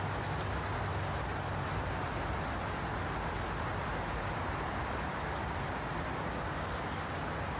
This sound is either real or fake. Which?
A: real